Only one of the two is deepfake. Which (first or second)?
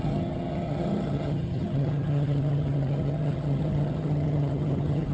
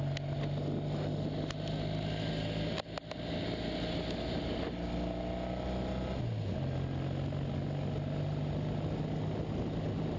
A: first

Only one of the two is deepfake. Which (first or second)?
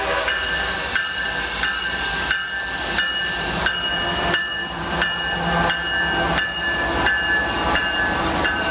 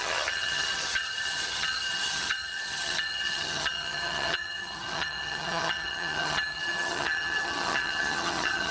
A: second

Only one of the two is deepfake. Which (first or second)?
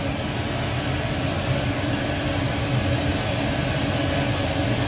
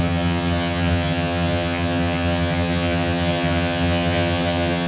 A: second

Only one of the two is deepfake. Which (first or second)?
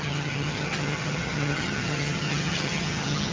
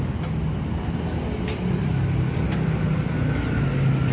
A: first